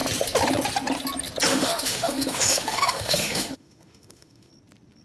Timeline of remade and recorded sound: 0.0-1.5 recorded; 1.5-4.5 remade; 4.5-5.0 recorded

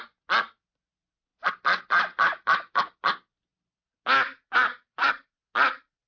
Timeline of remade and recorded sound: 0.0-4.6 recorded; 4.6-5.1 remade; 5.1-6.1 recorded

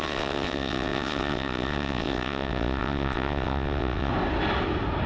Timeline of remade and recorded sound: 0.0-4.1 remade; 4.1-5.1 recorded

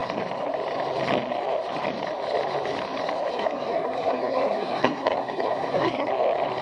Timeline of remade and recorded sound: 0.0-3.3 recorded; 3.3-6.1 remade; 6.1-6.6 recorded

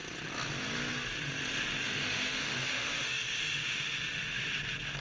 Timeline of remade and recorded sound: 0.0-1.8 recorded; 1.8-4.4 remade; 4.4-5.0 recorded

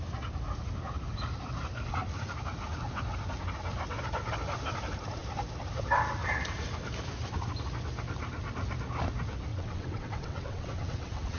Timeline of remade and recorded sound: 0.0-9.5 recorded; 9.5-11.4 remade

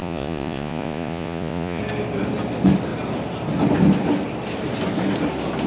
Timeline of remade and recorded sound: 0.0-1.8 remade; 1.8-5.7 recorded